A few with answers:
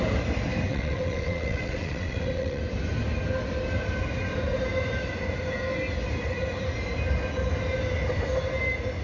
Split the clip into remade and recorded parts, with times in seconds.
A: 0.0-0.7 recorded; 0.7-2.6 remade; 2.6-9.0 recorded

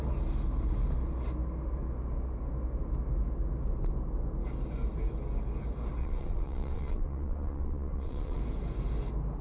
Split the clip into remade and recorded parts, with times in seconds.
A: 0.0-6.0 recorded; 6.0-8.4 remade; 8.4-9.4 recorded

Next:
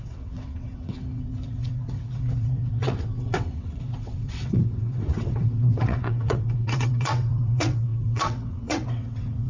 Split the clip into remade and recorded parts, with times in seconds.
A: 0.0-9.5 remade